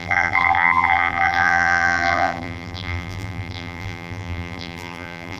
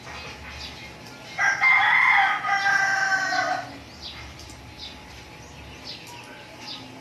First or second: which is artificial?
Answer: first